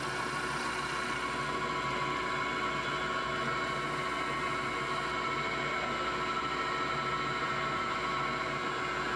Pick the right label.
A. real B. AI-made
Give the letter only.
A